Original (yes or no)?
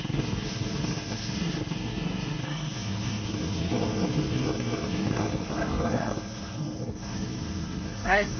no